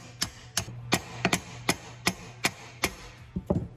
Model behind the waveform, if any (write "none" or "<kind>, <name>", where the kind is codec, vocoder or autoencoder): none